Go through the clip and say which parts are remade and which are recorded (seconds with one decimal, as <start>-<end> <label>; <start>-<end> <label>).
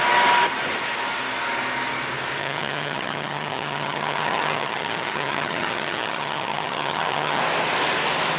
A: 0.0-2.4 recorded; 2.4-7.4 remade; 7.4-8.4 recorded